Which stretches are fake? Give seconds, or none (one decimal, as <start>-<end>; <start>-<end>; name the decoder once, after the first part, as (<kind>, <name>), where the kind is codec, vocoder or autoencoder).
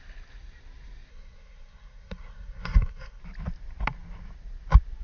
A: 1.1-3.2 (codec, SNAC)